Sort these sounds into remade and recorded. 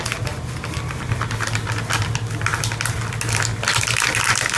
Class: recorded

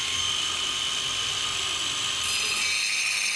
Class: recorded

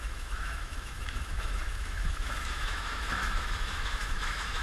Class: remade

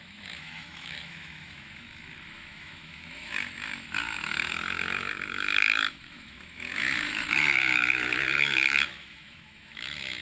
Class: remade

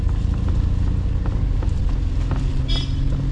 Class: recorded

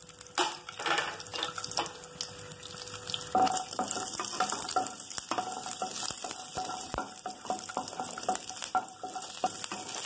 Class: recorded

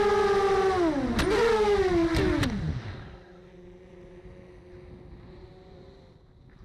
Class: recorded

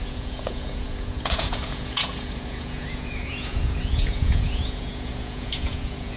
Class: remade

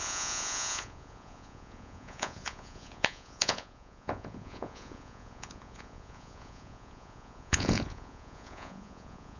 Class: remade